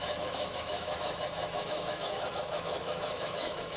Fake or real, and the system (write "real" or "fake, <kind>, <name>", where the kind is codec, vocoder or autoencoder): fake, autoencoder, DAC-VAE